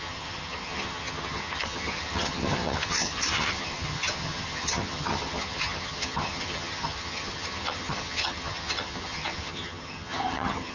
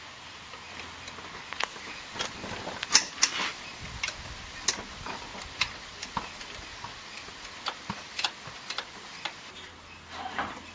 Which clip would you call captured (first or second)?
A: second